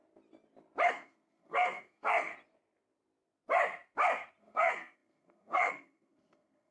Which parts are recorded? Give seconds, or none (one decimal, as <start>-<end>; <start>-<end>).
0.0-0.9; 2.3-4.4